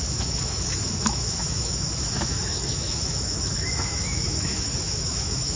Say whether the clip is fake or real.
fake